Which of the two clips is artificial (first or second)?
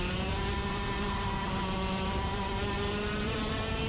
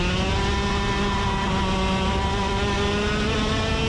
first